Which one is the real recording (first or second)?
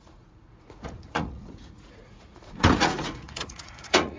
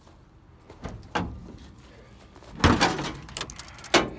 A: second